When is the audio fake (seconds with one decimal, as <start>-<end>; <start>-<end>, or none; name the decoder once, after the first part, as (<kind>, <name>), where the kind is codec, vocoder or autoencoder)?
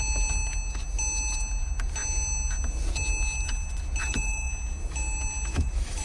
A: 4.0-4.5 (autoencoder, DAC-VAE); 5.5-6.0